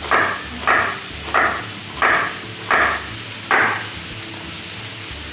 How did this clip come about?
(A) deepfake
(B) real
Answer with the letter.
B